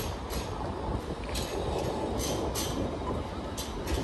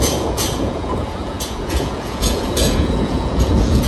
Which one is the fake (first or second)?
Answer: second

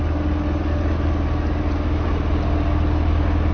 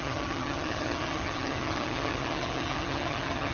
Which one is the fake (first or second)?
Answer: second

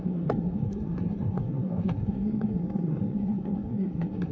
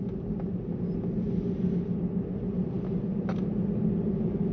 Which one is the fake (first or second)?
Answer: first